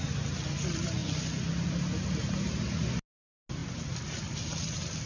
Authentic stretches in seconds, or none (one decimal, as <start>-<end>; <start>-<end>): 0.0-5.1